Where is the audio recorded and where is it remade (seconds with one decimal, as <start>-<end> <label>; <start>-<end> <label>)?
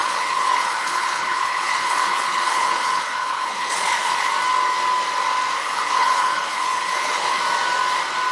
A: 0.0-4.3 remade; 4.3-5.6 recorded; 5.6-7.4 remade; 7.4-8.3 recorded